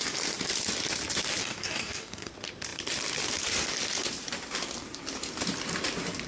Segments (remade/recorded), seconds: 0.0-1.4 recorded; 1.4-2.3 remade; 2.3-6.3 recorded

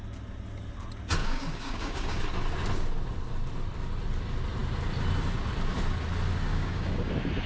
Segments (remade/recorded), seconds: 0.0-1.2 recorded; 1.2-2.2 remade; 2.2-6.5 recorded; 6.5-7.1 remade; 7.1-7.5 recorded

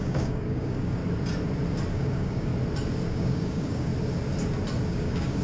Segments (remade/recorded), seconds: 0.0-1.0 remade; 1.0-1.9 recorded; 1.9-2.5 remade; 2.5-3.1 recorded; 3.1-3.9 remade; 3.9-4.9 recorded; 4.9-5.4 remade

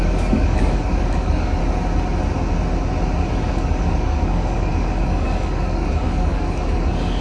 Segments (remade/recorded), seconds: 0.0-1.6 remade; 1.6-3.5 recorded; 3.5-7.2 remade